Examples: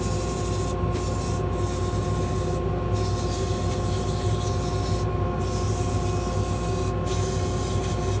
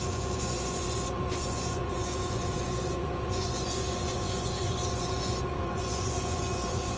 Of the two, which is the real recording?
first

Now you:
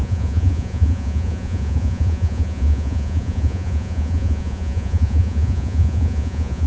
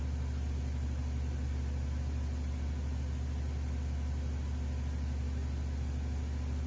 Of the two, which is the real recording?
second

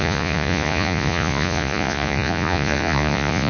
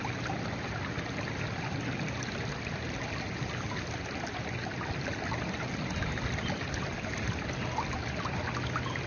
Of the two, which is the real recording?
second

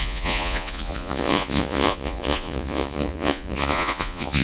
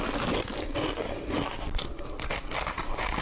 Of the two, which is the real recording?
second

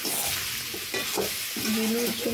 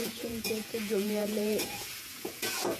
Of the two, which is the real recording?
first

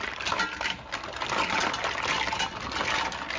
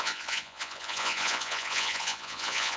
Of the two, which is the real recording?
first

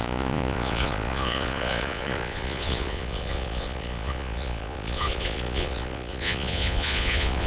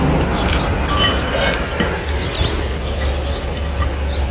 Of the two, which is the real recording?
second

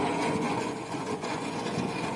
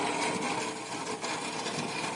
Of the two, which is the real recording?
second